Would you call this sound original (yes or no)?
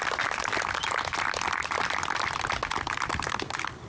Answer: yes